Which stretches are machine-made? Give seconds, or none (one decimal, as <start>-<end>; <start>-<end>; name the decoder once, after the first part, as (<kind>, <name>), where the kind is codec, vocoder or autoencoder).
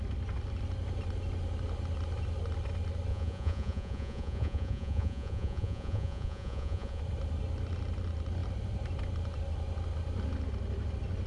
3.1-7.0 (vocoder, Vocos)